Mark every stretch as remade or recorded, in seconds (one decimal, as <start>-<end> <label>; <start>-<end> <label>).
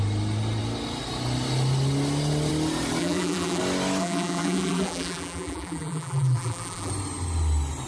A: 0.0-3.0 recorded; 3.0-3.6 remade; 3.6-4.0 recorded; 4.0-6.9 remade; 6.9-7.9 recorded